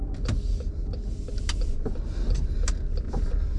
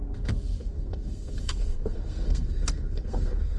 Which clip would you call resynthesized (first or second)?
second